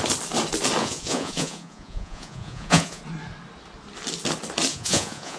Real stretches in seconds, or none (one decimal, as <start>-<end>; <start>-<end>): 0.0-0.8; 3.0-4.7